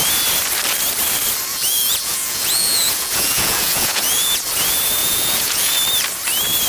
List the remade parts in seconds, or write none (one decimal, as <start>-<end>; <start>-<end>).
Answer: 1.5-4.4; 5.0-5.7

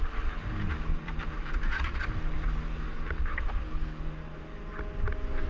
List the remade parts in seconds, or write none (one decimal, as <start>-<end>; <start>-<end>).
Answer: 0.9-2.0

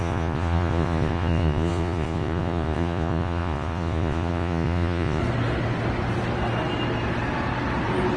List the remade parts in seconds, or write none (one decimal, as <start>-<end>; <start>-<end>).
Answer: 0.0-5.2

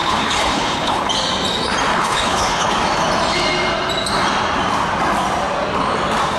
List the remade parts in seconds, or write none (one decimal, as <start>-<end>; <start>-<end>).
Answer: 0.0-1.1; 1.9-2.7